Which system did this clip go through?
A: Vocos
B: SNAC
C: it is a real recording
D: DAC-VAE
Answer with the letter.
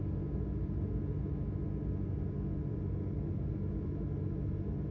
C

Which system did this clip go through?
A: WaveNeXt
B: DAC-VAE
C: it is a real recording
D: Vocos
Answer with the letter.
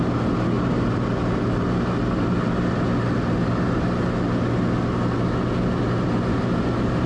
C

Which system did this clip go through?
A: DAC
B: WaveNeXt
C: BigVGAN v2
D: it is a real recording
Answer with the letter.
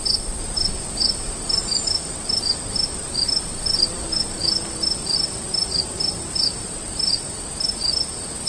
D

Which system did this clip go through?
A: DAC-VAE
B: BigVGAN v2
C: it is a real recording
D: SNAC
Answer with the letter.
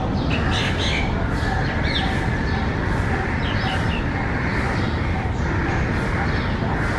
C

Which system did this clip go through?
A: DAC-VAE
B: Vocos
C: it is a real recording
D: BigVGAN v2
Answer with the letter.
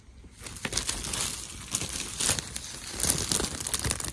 C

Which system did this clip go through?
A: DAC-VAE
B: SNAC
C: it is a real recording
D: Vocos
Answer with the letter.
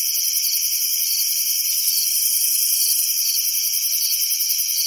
C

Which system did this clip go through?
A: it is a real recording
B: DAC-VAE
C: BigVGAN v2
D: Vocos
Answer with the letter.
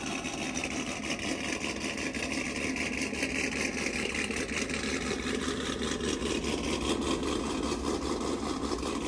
A